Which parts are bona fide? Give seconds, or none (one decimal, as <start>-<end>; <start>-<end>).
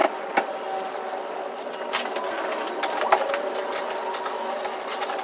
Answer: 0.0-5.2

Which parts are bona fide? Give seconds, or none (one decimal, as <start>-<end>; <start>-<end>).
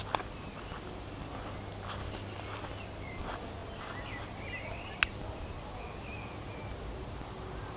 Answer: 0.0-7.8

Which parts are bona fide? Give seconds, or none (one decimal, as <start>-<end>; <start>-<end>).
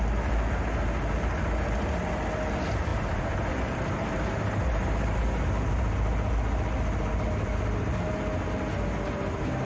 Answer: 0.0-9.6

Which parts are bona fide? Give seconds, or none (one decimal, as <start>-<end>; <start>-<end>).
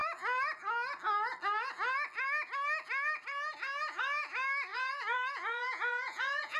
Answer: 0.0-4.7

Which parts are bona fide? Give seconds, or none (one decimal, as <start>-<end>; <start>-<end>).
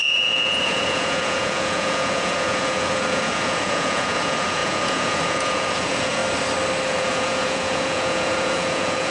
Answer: 6.2-6.9